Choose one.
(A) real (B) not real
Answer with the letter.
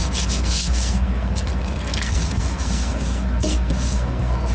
B